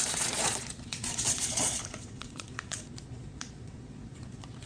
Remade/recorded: remade